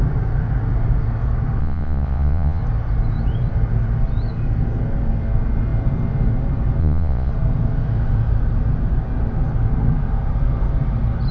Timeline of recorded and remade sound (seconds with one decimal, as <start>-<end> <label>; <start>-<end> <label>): 0.0-1.6 recorded; 1.6-2.6 remade; 2.6-6.8 recorded; 6.8-7.3 remade; 7.3-11.3 recorded